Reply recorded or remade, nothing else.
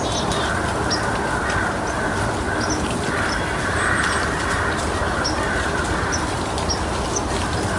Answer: recorded